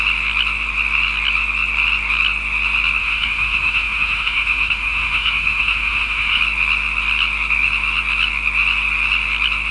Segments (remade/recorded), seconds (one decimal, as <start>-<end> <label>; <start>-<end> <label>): 0.0-3.0 recorded; 3.0-6.4 remade; 6.4-9.7 recorded